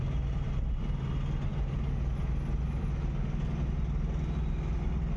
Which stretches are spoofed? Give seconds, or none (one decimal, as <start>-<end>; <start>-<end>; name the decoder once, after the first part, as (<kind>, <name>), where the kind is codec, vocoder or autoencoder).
none